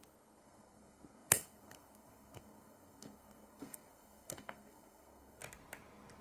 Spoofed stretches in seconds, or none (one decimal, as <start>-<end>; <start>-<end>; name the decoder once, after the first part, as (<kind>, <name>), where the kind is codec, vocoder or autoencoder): 0.0-5.4 (codec, SNAC)